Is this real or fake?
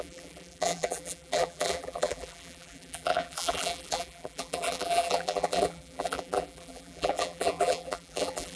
fake